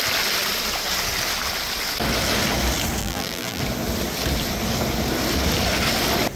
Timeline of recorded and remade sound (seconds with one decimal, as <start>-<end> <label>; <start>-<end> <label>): 0.0-3.0 recorded; 3.0-3.6 remade; 3.6-6.4 recorded